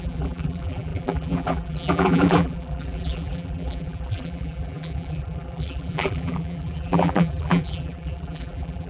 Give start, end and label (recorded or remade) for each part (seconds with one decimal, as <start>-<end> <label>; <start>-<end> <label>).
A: 0.0-8.9 remade